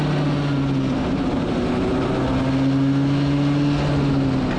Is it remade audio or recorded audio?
recorded